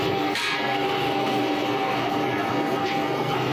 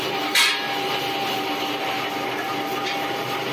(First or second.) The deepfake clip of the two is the first